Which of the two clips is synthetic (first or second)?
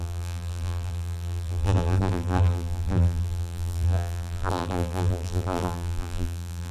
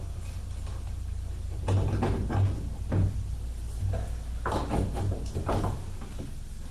first